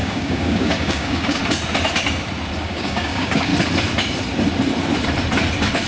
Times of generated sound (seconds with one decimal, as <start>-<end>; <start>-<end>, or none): 0.0-1.4; 2.6-3.5

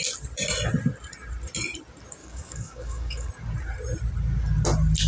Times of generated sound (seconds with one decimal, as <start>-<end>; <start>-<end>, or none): 2.2-3.3